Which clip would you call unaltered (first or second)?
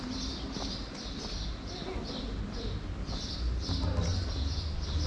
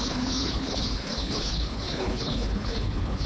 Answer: first